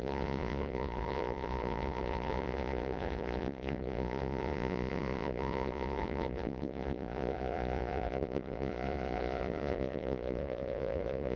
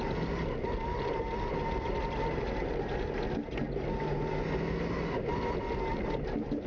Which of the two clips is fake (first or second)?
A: first